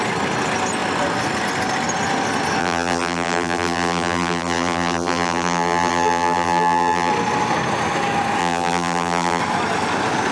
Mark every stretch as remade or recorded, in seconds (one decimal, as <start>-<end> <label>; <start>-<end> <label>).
0.0-2.6 recorded; 2.6-7.1 remade; 7.1-8.4 recorded; 8.4-9.4 remade; 9.4-10.3 recorded